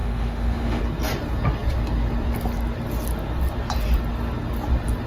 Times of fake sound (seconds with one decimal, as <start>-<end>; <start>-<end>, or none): 0.0-0.8